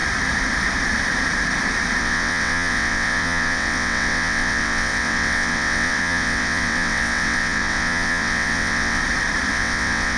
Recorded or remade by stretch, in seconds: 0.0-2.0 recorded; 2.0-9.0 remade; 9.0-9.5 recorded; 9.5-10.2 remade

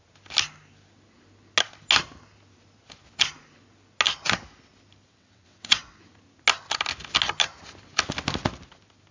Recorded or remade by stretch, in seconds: 0.0-5.1 recorded; 5.1-6.0 remade; 6.0-9.1 recorded

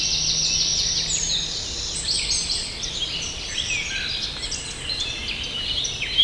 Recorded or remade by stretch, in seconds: 0.0-6.2 recorded